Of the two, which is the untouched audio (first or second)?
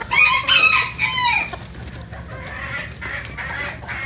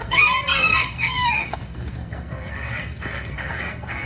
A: first